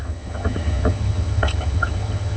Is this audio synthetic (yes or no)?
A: yes